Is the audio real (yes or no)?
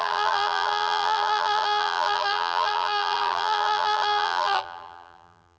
no